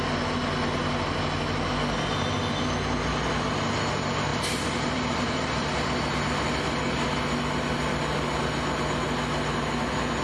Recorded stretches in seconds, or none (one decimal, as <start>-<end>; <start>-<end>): 0.0-4.3; 5.7-10.2